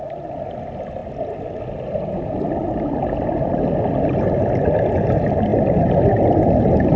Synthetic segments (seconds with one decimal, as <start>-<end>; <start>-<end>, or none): none